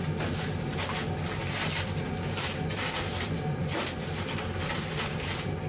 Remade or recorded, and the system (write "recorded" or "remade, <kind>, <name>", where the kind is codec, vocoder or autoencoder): recorded